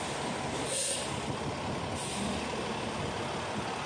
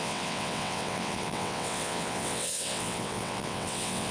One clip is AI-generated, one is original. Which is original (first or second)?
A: first